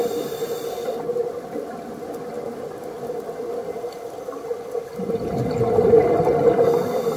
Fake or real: real